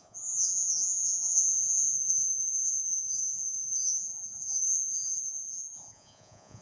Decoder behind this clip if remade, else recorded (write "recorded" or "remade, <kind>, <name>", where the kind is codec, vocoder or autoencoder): remade, vocoder, Vocos